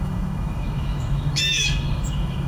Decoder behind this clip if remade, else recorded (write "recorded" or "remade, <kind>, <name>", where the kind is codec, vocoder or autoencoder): remade, autoencoder, DAC-VAE